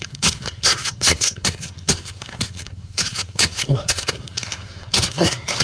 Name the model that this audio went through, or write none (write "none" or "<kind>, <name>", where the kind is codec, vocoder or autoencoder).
codec, SNAC